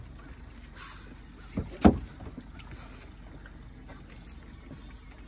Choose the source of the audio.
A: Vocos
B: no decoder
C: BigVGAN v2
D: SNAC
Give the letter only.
B